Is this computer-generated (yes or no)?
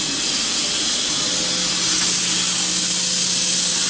no